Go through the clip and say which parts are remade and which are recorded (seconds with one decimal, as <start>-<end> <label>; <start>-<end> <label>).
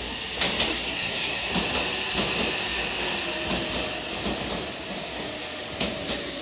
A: 0.0-0.7 recorded; 0.7-1.5 remade; 1.5-6.4 recorded